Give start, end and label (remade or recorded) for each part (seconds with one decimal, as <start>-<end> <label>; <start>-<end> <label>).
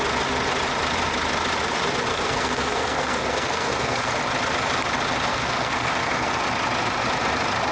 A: 0.0-2.1 recorded; 2.1-4.1 remade; 4.1-5.3 recorded; 5.3-6.4 remade; 6.4-7.7 recorded